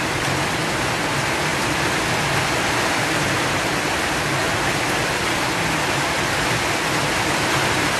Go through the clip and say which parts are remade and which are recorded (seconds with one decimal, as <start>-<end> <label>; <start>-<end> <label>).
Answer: 0.0-8.0 recorded